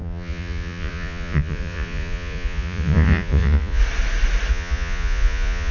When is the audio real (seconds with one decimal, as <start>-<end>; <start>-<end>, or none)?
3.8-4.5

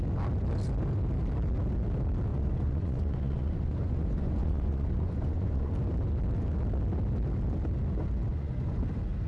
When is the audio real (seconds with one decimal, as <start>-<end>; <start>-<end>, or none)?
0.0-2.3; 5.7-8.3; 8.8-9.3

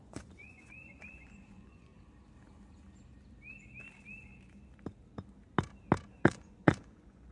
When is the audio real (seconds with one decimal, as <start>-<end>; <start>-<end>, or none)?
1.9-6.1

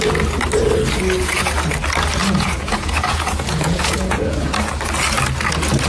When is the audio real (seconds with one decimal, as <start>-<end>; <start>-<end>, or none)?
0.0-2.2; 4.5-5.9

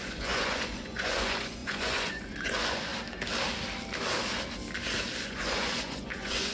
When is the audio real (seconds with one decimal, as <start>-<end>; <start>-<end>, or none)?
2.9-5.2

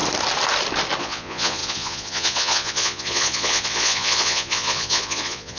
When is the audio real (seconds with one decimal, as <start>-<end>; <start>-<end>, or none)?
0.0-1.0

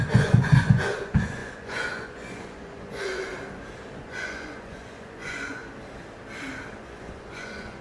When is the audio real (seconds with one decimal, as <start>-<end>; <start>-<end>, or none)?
3.3-4.0; 5.6-6.8

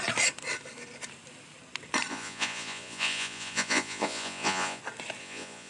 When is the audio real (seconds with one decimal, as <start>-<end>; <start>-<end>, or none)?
0.0-2.1; 4.8-5.2